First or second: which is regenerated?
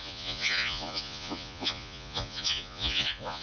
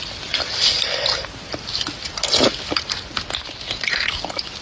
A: first